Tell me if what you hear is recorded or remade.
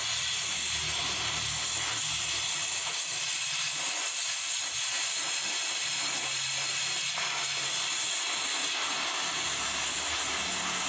recorded